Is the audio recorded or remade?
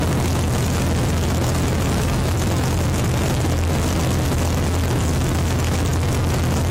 recorded